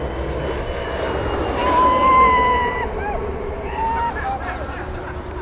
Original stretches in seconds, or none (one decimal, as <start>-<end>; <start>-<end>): 0.0-5.4

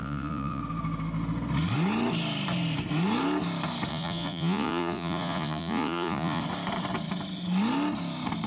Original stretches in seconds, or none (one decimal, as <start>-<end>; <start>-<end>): 0.6-3.9; 6.4-8.5